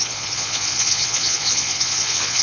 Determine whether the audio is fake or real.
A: fake